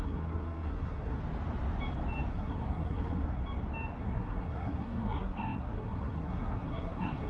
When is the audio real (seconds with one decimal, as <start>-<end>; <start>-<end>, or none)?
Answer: 1.2-2.3; 3.4-4.0